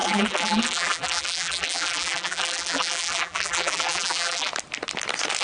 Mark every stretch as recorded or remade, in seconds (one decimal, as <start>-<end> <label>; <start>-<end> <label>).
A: 0.0-4.5 remade; 4.5-5.4 recorded